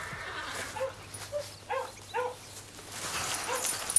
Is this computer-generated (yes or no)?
no